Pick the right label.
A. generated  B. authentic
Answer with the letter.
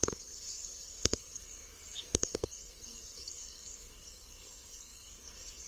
A